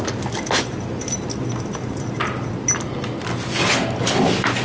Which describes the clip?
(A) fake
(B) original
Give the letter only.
B